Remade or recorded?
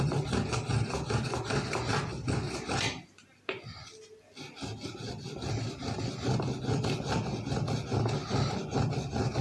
recorded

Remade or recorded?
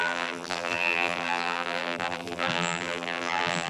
remade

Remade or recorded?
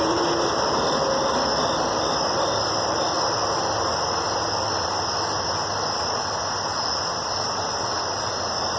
recorded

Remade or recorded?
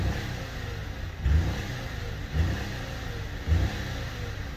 recorded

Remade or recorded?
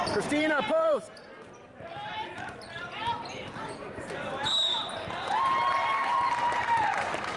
remade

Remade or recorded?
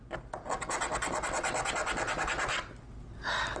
recorded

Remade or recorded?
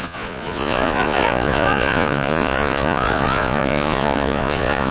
remade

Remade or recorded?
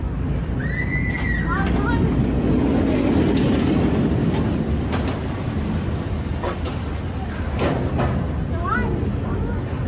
recorded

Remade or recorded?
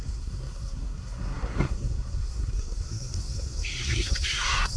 remade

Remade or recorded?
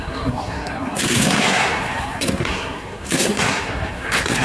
remade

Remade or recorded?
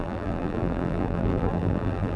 remade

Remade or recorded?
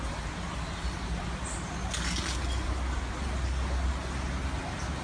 recorded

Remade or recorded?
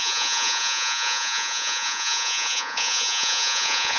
remade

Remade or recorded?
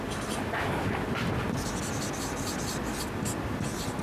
recorded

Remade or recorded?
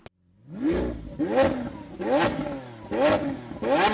recorded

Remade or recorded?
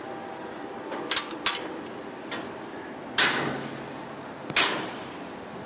recorded